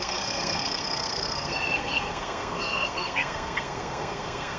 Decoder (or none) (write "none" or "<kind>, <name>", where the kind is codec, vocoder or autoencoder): codec, SNAC